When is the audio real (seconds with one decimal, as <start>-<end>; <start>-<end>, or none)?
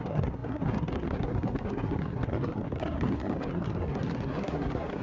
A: none